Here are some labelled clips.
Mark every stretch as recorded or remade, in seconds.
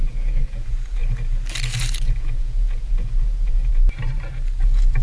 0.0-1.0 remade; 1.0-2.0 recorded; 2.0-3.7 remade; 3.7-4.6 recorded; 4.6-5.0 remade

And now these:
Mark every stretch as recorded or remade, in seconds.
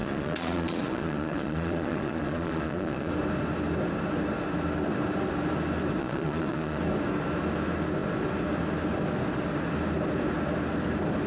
0.0-3.1 remade; 3.1-6.0 recorded; 6.0-6.8 remade; 6.8-11.3 recorded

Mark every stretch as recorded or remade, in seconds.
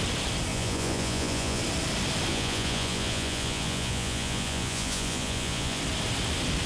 0.0-0.5 recorded; 0.5-1.6 remade; 1.6-2.3 recorded; 2.3-5.8 remade; 5.8-6.7 recorded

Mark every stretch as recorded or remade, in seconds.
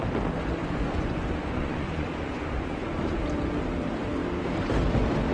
0.0-0.6 recorded; 0.6-3.2 remade; 3.2-5.3 recorded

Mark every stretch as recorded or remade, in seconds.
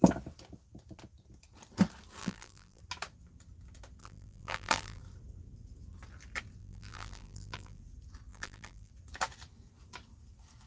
0.0-2.2 recorded; 2.2-2.8 remade; 2.8-4.0 recorded; 4.0-5.0 remade; 5.0-6.6 recorded; 6.6-7.8 remade; 7.8-8.3 recorded; 8.3-8.9 remade; 8.9-10.7 recorded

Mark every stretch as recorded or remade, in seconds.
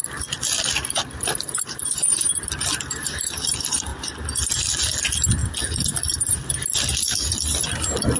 0.0-3.9 remade; 3.9-5.0 recorded; 5.0-5.4 remade; 5.4-6.6 recorded; 6.6-8.2 remade